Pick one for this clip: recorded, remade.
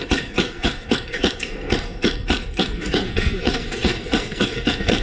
remade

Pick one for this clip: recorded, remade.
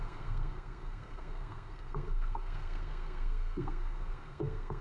remade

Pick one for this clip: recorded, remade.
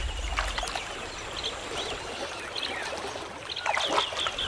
recorded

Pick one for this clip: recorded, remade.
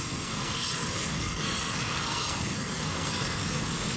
remade